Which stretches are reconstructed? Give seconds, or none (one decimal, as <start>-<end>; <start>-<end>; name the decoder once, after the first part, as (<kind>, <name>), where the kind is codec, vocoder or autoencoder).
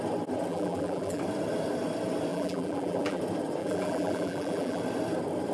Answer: 0.5-1.2 (vocoder, BigVGAN v2); 2.3-3.2; 3.6-4.8